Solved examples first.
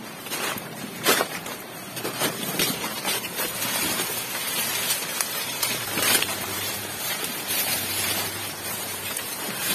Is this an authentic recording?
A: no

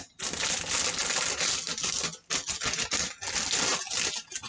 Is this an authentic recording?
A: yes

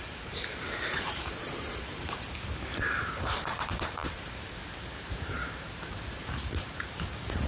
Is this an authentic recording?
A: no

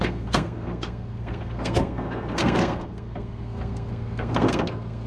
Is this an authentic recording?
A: no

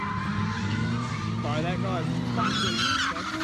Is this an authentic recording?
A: yes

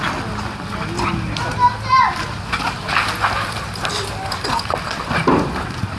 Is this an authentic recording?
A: yes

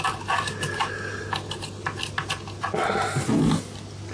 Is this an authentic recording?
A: yes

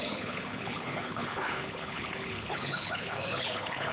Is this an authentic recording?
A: no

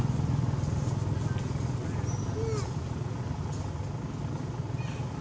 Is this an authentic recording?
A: yes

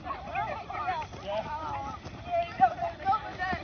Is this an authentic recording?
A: yes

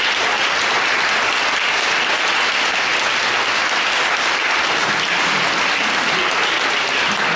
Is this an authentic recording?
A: yes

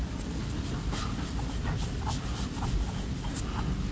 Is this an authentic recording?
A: yes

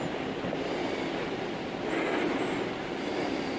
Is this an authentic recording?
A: yes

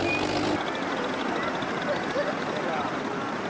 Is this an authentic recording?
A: yes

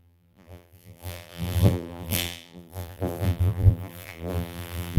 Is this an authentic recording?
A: no